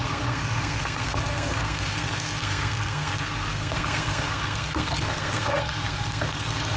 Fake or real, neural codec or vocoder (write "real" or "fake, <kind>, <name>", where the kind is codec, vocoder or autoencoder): fake, codec, SNAC